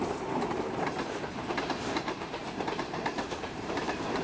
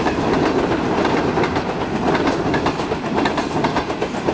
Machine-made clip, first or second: first